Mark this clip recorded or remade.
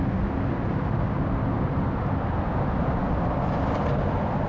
recorded